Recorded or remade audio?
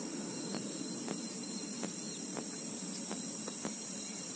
remade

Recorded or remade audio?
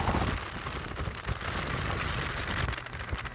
recorded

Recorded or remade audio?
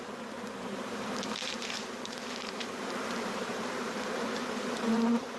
remade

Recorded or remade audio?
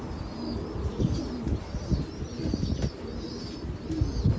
recorded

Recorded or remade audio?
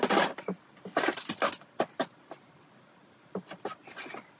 recorded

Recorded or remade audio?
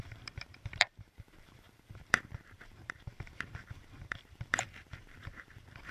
remade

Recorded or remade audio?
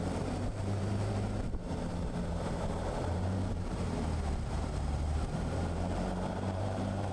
remade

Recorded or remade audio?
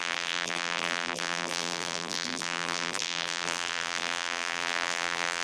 remade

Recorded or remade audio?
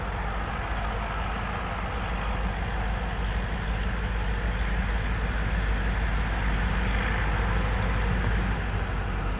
recorded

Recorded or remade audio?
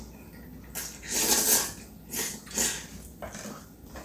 recorded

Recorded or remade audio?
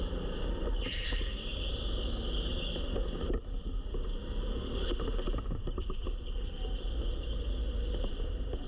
recorded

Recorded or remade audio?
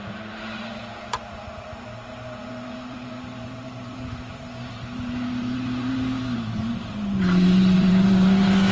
remade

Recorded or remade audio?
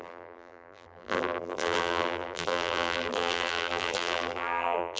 remade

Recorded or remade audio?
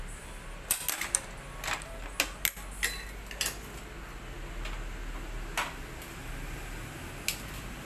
recorded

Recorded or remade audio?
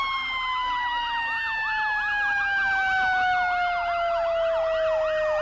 recorded